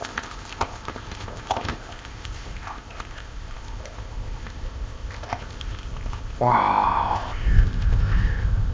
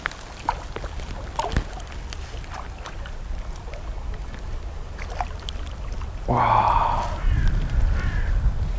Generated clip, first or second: first